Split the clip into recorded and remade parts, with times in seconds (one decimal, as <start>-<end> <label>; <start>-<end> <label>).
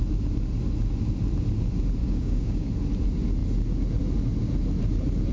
0.0-2.0 recorded; 2.0-2.7 remade; 2.7-5.3 recorded